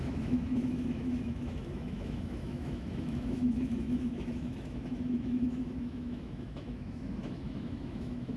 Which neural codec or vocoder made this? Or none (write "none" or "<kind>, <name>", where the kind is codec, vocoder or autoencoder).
autoencoder, DAC-VAE